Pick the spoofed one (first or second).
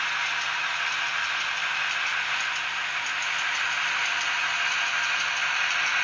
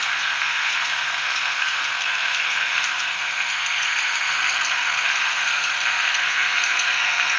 second